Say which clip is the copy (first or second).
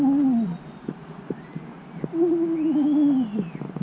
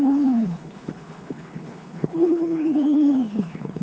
second